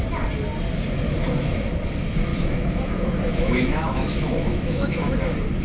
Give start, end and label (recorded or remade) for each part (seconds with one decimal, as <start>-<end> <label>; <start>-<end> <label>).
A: 0.0-2.3 recorded; 2.3-5.1 remade; 5.1-5.6 recorded